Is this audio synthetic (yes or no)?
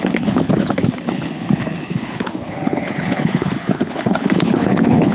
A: yes